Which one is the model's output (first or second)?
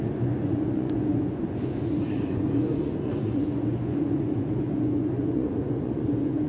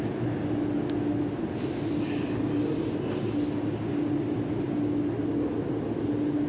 first